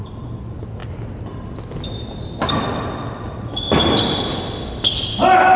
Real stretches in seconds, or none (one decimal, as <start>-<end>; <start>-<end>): 0.0-5.6